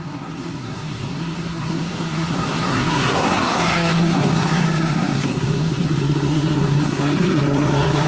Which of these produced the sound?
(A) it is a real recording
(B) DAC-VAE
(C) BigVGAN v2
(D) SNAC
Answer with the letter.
D